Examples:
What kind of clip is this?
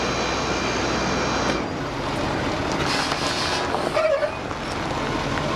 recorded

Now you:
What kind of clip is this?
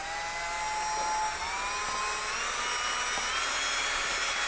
recorded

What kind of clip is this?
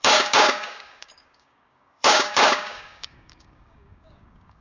remade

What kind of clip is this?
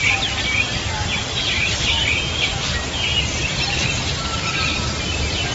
recorded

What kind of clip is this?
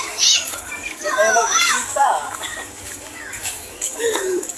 remade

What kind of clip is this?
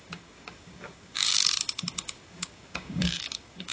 remade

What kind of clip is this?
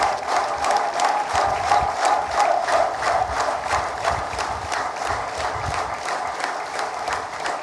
recorded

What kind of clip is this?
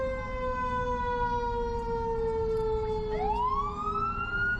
recorded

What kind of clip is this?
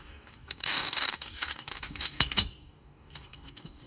remade